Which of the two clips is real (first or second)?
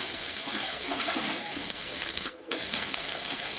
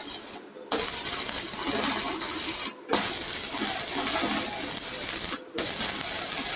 second